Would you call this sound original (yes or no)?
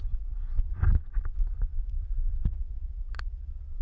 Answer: no